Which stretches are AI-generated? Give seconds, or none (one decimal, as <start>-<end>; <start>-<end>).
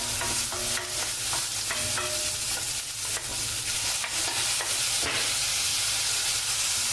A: 3.3-3.9